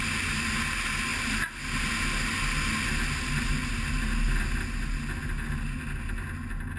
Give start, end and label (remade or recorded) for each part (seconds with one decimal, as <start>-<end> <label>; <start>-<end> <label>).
0.0-6.8 recorded